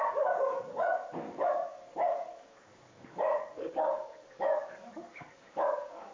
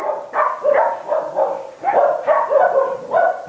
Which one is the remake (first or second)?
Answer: first